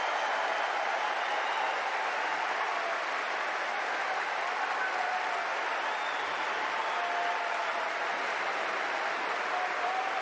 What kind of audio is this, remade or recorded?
recorded